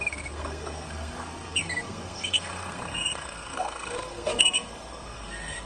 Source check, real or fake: fake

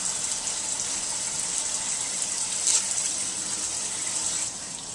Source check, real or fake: real